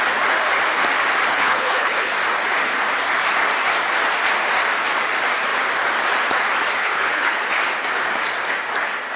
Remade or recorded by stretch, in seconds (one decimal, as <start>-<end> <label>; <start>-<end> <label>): 0.0-1.3 recorded; 1.3-2.1 remade; 2.1-6.8 recorded; 6.8-7.4 remade; 7.4-9.2 recorded